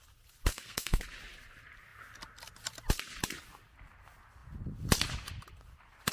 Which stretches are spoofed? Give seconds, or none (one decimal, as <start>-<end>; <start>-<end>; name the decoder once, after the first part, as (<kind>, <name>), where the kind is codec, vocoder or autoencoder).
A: 0.5-1.0 (codec, SNAC)

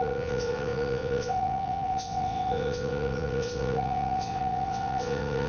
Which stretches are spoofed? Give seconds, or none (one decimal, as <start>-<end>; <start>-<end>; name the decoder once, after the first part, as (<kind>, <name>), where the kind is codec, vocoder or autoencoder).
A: 0.0-5.5 (vocoder, WaveNeXt)